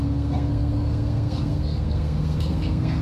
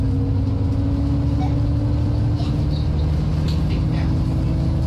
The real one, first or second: second